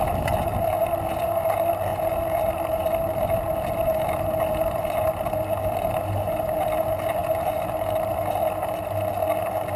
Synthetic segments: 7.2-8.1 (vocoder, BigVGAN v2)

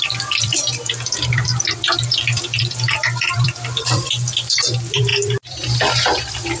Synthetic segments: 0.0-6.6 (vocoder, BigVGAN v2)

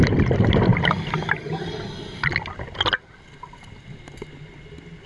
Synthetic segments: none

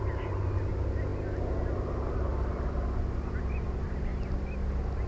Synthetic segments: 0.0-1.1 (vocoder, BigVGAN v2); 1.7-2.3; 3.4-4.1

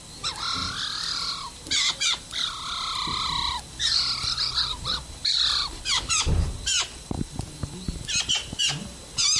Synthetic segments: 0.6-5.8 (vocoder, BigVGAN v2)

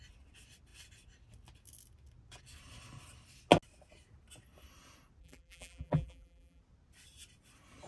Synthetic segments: 5.2-6.6 (vocoder, BigVGAN v2)